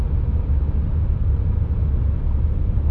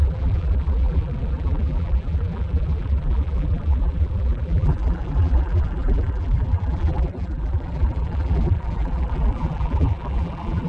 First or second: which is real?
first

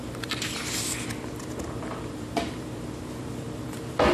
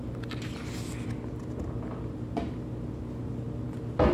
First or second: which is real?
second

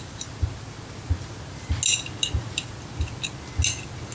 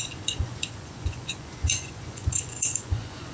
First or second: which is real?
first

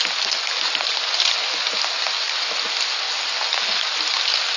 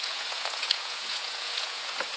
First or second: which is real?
first